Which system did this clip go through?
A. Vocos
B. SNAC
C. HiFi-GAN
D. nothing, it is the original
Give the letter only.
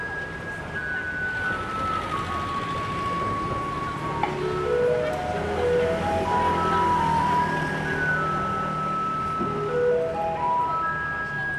D